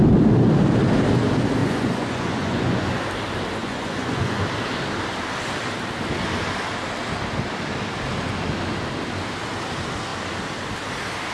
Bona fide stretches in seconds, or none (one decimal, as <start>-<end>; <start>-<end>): 0.0-1.6; 3.0-3.6; 4.4-11.3